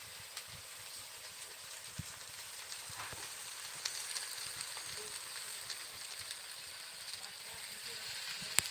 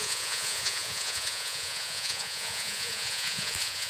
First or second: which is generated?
second